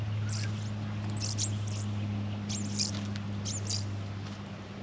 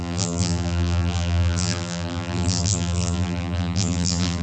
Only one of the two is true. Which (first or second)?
first